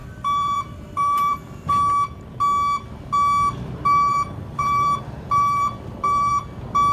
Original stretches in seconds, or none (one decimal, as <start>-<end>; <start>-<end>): 1.7-4.1; 6.3-6.9